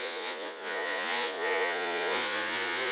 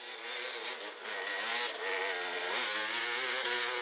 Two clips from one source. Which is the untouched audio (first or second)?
second